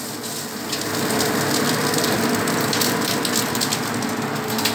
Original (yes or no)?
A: yes